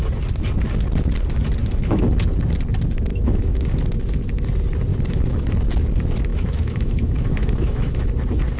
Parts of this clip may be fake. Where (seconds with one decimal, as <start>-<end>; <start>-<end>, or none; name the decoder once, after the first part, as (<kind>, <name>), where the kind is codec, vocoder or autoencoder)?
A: 1.6-2.2 (autoencoder, DAC-VAE); 3.1-3.7; 4.9-5.5; 6.3-8.1